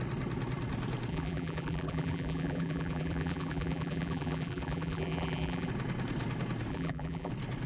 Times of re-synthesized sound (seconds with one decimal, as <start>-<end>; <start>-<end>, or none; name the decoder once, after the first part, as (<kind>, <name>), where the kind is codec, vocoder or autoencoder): 1.1-5.7 (vocoder, BigVGAN v2); 6.7-7.3

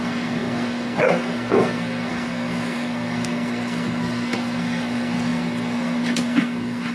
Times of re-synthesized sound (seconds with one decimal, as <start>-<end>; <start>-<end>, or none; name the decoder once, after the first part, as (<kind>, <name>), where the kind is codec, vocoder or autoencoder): 0.0-6.9 (codec, SNAC)

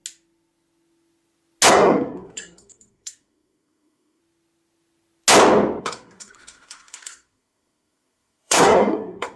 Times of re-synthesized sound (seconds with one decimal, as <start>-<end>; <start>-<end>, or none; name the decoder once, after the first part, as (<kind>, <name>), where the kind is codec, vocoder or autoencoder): 1.7-4.2 (codec, SNAC); 5.8-9.4